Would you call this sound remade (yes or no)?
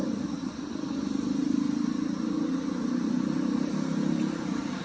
no